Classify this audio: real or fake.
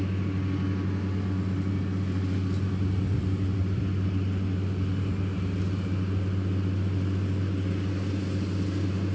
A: real